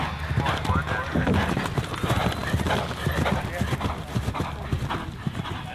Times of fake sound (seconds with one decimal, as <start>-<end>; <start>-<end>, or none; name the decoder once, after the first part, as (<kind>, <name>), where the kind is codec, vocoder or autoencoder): none